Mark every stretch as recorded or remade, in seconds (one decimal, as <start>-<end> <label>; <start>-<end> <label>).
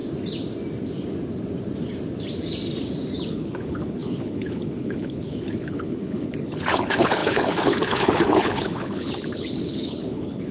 0.0-3.3 recorded; 3.3-10.5 remade